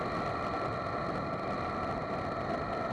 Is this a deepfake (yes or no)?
no